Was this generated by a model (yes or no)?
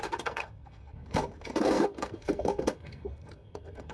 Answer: yes